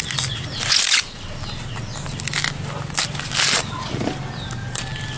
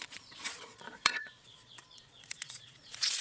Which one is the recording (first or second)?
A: first